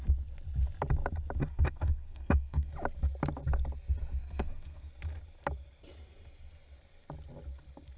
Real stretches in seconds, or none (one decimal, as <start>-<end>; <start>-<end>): 0.0-1.5; 2.7-4.2; 4.9-8.0